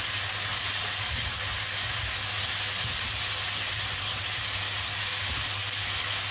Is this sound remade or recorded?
recorded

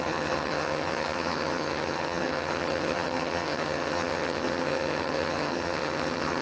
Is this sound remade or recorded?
remade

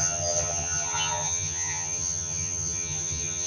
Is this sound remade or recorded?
remade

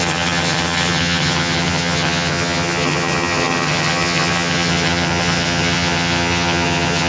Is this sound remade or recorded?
remade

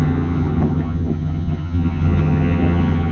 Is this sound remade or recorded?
remade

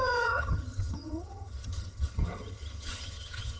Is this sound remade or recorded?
remade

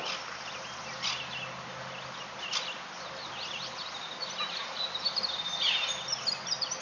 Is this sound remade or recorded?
recorded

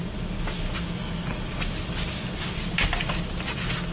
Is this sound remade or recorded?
recorded